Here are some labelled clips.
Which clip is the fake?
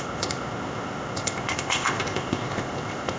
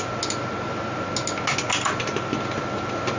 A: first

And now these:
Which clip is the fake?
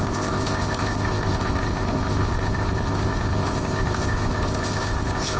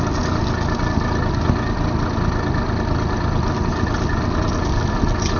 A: first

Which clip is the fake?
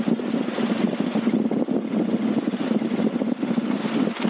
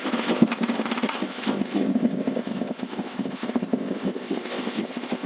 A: second